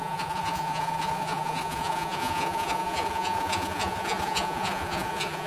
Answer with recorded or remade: remade